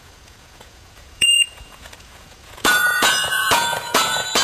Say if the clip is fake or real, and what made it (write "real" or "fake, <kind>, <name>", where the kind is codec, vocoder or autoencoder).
fake, vocoder, Vocos